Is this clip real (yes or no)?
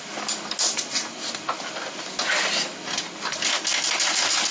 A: yes